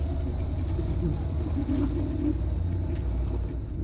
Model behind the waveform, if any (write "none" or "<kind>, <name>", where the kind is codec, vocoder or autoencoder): none